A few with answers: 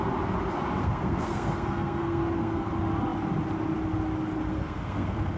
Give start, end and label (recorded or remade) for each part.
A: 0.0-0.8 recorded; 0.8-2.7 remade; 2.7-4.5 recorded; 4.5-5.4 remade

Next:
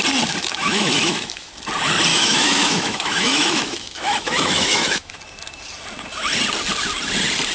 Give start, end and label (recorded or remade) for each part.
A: 0.0-0.4 recorded; 0.4-1.5 remade; 1.5-2.1 recorded; 2.1-5.2 remade; 5.2-7.5 recorded

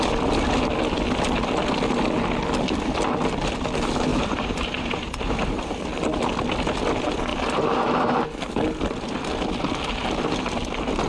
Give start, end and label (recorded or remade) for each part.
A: 0.0-4.1 recorded; 4.1-5.8 remade; 5.8-11.1 recorded

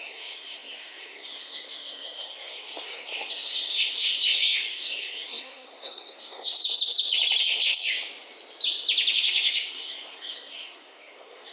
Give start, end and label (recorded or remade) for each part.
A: 0.0-6.6 remade; 6.6-7.4 recorded; 7.4-8.0 remade; 8.0-9.1 recorded; 9.1-11.5 remade

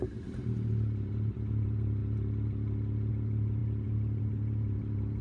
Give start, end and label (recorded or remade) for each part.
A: 0.0-2.0 remade; 2.0-3.1 recorded; 3.1-5.2 remade

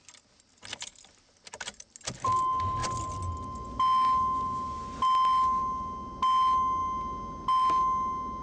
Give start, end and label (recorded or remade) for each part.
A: 0.0-8.4 recorded

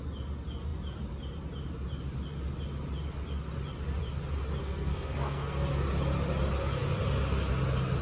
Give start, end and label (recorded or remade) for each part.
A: 0.0-4.6 recorded; 4.6-5.7 remade; 5.7-8.0 recorded